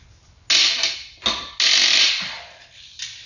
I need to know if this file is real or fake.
real